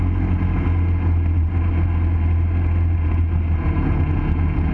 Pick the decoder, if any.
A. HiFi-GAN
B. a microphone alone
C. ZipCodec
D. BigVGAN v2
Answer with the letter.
B